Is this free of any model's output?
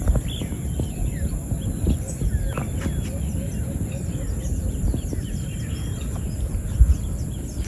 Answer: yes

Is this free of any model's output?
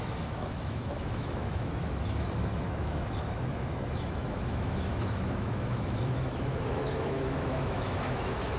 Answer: no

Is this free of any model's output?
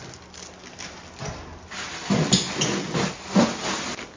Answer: yes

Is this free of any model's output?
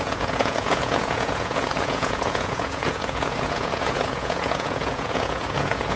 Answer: no